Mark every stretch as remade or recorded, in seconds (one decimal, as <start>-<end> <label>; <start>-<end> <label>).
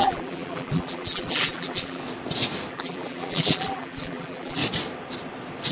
0.0-2.0 remade; 2.0-2.7 recorded; 2.7-4.6 remade; 4.6-5.7 recorded